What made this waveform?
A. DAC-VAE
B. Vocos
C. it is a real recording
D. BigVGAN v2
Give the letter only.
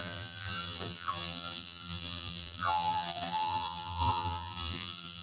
D